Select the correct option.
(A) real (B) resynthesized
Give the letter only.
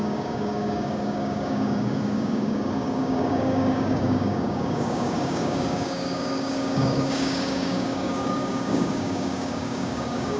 B